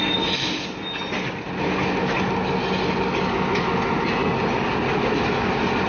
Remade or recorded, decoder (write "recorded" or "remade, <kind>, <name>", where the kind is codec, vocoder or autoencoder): recorded